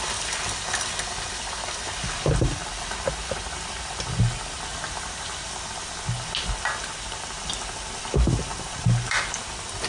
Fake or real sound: real